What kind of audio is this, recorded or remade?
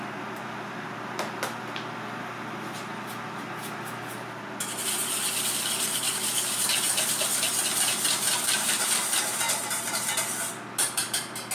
recorded